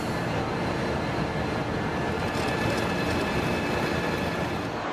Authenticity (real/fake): real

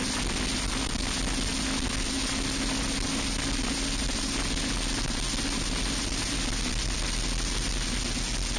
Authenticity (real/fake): real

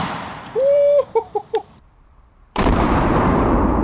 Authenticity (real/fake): fake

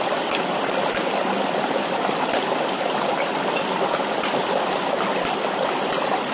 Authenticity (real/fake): real